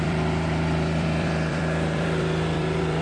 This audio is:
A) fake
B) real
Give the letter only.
A